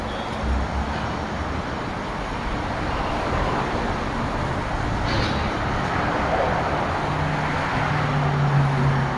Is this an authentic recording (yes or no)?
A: yes